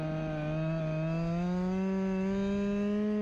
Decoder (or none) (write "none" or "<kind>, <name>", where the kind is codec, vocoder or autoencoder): none